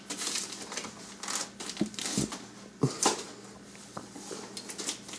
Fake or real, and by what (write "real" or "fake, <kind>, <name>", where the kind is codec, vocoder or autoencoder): real